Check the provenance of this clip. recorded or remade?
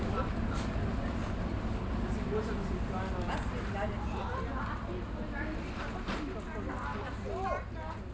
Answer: recorded